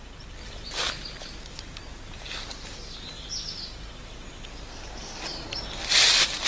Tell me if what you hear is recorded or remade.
recorded